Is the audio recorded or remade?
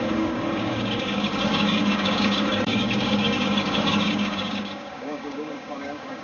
remade